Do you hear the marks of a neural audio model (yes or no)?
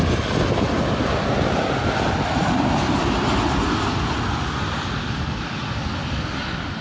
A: no